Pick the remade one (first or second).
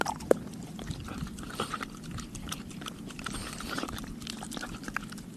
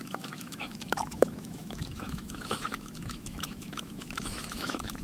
second